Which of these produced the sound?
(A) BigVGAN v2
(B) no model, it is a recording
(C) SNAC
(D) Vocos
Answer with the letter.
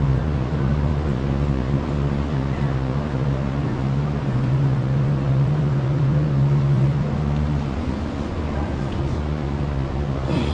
D